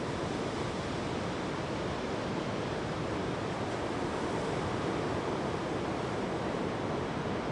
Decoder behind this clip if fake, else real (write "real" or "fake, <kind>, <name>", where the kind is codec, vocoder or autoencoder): real